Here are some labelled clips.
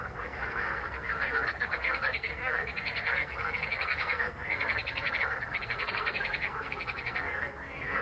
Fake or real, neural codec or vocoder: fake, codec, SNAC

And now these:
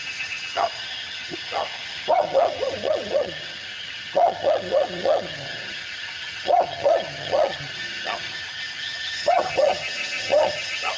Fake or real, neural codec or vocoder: fake, vocoder, HiFi-GAN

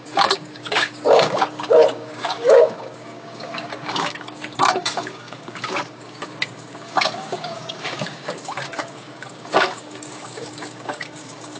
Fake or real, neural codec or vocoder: fake, codec, DAC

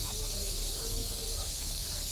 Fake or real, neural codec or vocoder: fake, codec, SNAC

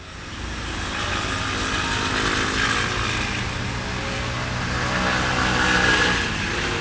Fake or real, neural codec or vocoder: real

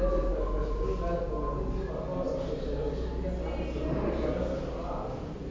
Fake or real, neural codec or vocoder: real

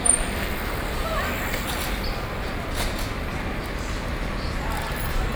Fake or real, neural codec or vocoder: real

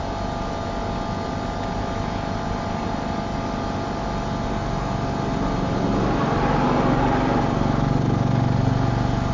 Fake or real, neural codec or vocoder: real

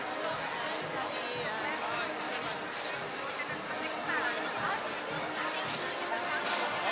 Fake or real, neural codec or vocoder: real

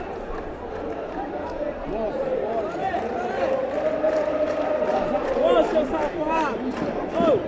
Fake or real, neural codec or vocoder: fake, vocoder, BigVGAN v2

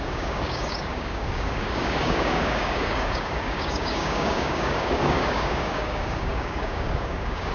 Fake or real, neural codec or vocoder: fake, codec, DAC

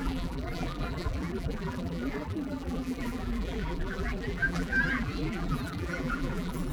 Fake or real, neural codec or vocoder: fake, vocoder, BigVGAN v2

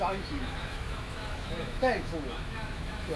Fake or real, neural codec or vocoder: fake, autoencoder, DAC-VAE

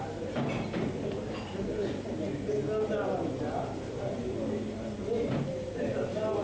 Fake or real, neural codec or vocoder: real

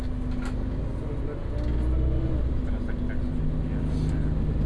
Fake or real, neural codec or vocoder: real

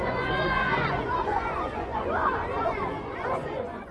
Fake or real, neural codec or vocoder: fake, vocoder, Vocos